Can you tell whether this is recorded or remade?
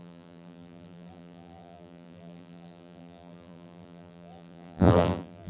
remade